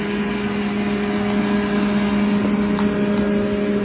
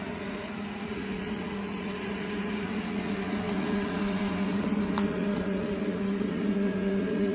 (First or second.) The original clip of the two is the first